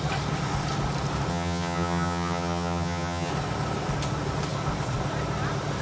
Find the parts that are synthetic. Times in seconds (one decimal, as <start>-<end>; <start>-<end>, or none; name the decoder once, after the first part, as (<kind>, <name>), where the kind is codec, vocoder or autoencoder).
1.3-3.3 (vocoder, HiFi-GAN)